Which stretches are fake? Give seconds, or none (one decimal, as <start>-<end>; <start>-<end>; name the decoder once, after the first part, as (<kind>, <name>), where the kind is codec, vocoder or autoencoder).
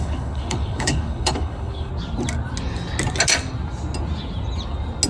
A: 0.0-1.9 (codec, HILCodec)